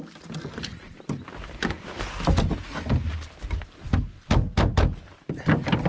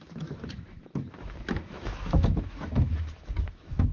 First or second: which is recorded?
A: first